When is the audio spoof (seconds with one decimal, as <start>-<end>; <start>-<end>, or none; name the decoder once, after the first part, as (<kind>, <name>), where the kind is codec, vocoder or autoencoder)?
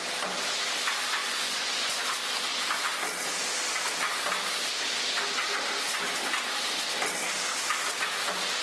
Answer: 1.2-2.0 (vocoder, Vocos)